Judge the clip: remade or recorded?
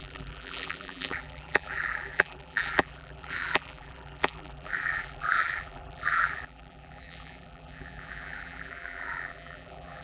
remade